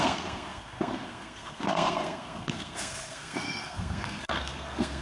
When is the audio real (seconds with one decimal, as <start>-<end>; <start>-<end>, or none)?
none